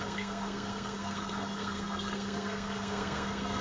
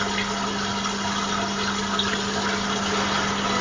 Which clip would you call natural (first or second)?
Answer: second